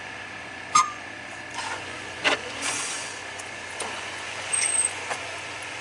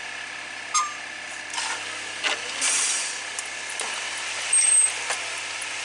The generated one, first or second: first